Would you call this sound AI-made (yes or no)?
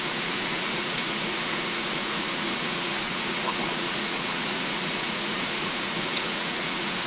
yes